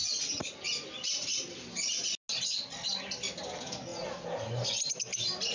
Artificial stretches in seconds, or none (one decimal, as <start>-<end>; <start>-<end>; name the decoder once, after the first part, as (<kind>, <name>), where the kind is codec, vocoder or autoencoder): none

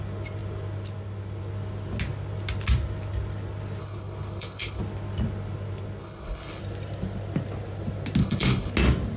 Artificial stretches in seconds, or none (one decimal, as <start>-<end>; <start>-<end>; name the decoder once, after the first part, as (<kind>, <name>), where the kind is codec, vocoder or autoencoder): 3.8-4.8 (codec, HILCodec); 6.0-6.6; 8.2-8.7

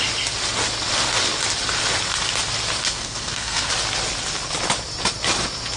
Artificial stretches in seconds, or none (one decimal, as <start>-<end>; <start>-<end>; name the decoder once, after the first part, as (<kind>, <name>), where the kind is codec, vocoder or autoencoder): 2.8-3.7 (codec, SNAC)

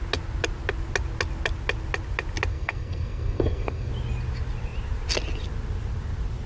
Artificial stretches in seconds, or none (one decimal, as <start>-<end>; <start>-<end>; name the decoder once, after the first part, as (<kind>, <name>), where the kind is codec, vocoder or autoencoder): 2.5-3.9 (codec, SNAC)

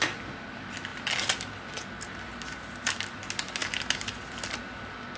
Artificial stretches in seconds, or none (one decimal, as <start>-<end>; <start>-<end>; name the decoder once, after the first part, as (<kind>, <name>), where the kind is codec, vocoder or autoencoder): none

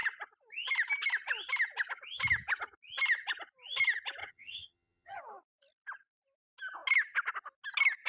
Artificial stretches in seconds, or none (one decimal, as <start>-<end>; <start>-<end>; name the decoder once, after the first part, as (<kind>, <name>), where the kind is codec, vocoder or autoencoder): 4.2-5.2 (vocoder, HiFi-GAN)

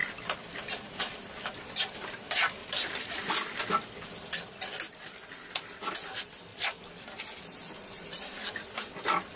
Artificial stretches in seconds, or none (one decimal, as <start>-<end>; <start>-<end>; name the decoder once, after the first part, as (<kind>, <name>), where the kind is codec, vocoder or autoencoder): 2.6-3.6 (vocoder, BigVGAN v2); 6.5-7.0

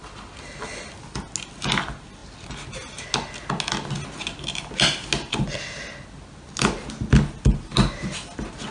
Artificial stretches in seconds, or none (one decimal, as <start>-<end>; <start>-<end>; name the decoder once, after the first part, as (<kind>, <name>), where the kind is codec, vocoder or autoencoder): none